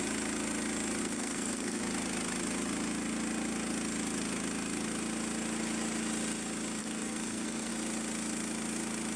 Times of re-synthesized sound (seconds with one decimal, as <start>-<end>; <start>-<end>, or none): 1.0-1.8; 6.8-7.7